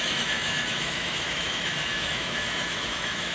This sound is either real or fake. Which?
fake